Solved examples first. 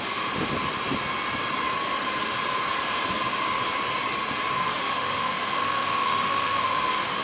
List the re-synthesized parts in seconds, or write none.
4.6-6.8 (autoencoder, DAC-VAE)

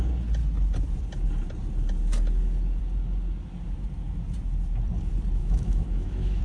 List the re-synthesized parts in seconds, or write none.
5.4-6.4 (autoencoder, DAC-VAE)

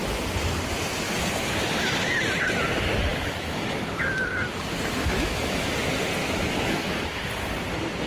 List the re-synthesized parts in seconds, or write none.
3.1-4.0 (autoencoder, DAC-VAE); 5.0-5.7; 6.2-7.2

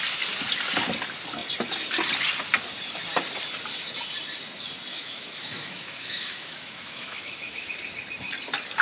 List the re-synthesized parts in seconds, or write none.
4.9-7.7 (autoencoder, DAC-VAE)